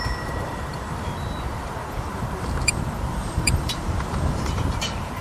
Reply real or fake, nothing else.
fake